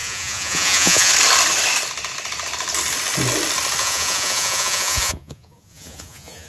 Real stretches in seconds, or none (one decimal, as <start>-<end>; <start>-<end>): 1.1-3.8